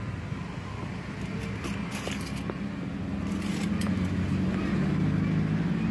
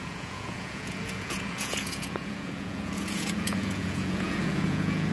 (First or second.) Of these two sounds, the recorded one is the first